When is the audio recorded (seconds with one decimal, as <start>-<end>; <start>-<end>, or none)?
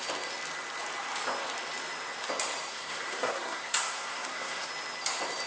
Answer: 0.0-2.7; 4.7-5.5